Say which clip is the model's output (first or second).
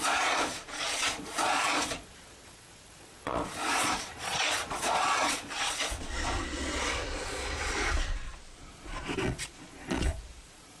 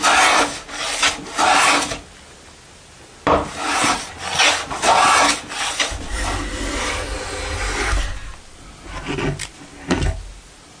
first